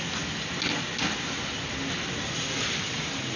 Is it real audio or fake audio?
real